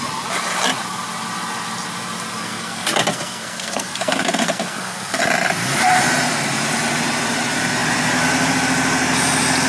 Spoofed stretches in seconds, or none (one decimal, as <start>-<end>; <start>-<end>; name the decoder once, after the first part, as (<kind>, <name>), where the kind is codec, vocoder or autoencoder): 2.4-5.2 (codec, SNAC)